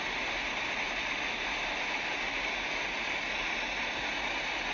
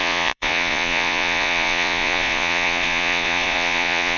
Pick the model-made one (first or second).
second